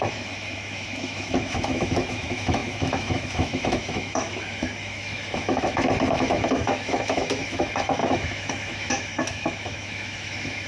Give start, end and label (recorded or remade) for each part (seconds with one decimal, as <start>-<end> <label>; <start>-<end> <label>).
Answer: 0.0-10.7 remade